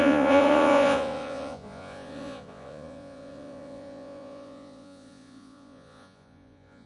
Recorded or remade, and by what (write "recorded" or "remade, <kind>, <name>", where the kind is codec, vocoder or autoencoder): remade, vocoder, Vocos